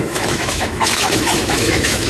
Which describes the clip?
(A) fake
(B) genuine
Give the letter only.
A